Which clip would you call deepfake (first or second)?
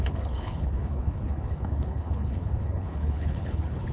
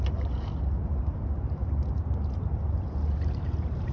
first